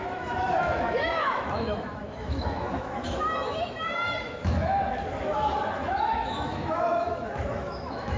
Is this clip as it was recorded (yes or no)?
no